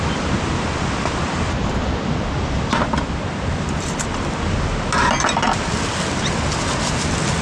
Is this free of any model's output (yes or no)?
yes